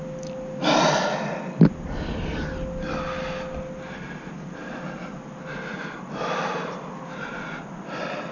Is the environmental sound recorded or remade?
recorded